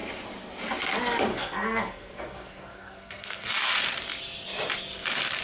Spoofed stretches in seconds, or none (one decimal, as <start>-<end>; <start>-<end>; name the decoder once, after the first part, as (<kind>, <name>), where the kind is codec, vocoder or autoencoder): 1.3-3.5 (codec, SNAC)